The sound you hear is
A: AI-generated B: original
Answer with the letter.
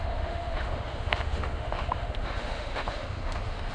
A